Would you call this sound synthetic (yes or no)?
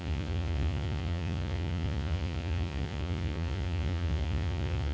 yes